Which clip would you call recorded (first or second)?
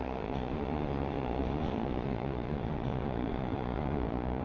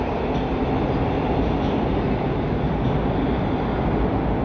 second